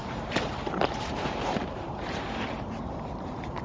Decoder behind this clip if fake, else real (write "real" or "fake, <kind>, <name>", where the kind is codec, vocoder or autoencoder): fake, vocoder, BigVGAN v2